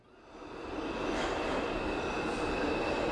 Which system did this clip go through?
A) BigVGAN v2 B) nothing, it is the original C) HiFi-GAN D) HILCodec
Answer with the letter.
B